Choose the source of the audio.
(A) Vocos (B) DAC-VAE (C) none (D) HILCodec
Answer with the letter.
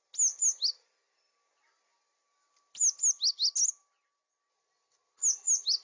C